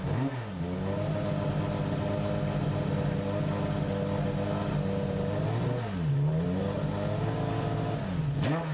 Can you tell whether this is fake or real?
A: real